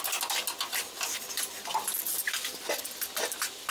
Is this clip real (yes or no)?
yes